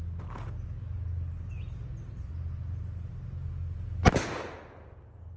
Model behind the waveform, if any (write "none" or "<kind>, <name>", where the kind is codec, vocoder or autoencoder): none